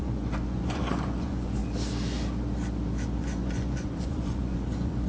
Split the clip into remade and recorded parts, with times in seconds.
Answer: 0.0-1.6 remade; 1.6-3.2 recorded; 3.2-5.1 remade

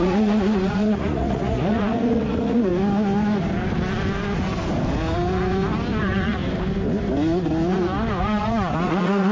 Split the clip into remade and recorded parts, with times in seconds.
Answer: 0.0-2.7 remade; 2.7-6.0 recorded; 6.0-6.4 remade; 6.4-8.2 recorded; 8.2-9.3 remade

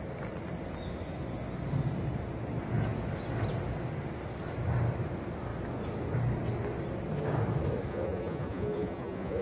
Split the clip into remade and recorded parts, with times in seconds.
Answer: 0.0-7.9 recorded; 7.9-9.4 remade

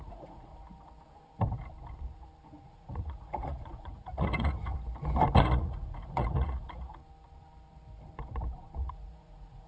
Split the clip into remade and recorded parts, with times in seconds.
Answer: 0.0-0.5 remade; 0.5-2.7 recorded; 2.7-4.7 remade; 4.7-5.4 recorded; 5.4-7.0 remade; 7.0-8.9 recorded; 8.9-9.7 remade